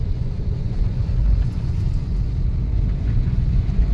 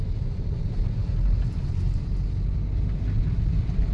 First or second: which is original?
second